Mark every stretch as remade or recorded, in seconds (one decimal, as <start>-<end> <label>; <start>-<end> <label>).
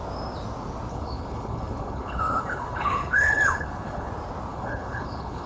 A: 0.0-0.9 recorded; 0.9-4.1 remade; 4.1-4.5 recorded; 4.5-5.5 remade